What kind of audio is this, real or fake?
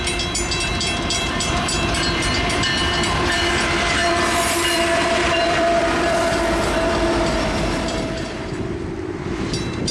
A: fake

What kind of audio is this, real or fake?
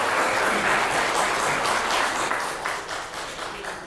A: real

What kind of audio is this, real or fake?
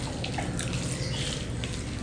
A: real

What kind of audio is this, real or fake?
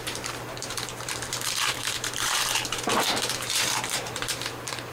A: fake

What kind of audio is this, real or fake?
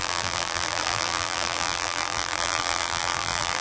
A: fake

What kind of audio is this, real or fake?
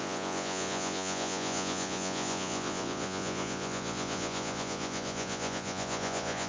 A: fake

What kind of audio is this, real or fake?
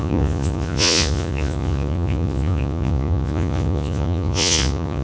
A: fake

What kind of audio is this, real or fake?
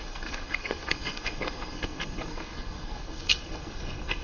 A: fake